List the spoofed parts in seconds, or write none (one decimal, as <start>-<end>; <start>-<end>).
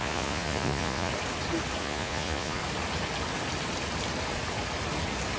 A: 0.0-1.1; 1.8-2.6